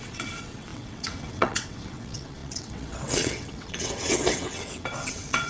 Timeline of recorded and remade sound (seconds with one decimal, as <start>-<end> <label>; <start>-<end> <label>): 0.0-5.5 remade